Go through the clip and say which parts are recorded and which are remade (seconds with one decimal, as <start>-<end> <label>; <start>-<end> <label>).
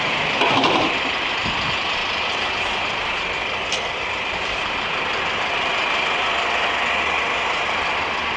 0.0-2.0 remade; 2.0-2.6 recorded; 2.6-5.7 remade; 5.7-7.5 recorded; 7.5-8.4 remade